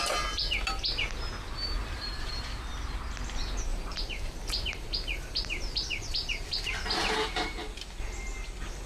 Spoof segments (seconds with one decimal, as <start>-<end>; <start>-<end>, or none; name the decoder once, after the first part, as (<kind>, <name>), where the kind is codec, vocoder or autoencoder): 1.8-2.7 (vocoder, BigVGAN v2); 3.7-7.6